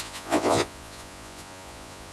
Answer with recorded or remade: remade